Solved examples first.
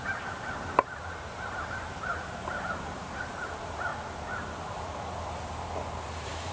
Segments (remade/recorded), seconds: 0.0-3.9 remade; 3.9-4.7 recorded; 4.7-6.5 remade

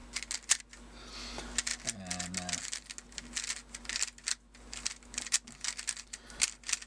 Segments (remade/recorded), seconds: 0.0-6.9 recorded

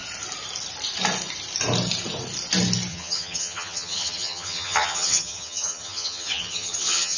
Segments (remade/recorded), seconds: 0.0-2.9 recorded; 2.9-7.2 remade

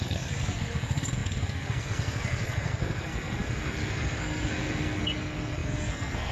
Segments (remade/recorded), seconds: 0.0-6.3 remade

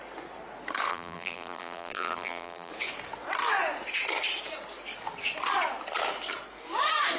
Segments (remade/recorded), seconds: 0.0-0.9 recorded; 0.9-2.7 remade; 2.7-7.2 recorded